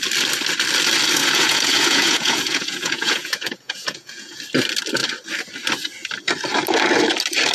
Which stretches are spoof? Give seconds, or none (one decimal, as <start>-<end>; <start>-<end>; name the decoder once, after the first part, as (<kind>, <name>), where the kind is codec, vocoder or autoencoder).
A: 1.2-4.4 (vocoder, Vocos)